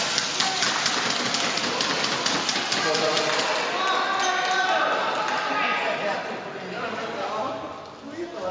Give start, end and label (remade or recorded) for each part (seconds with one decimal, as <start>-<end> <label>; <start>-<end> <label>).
0.0-8.5 recorded